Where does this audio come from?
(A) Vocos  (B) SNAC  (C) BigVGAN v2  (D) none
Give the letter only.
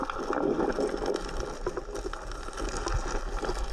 D